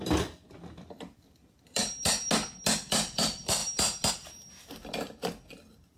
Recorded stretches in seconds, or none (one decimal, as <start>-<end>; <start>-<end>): 1.8-2.7; 3.6-4.1; 5.2-6.0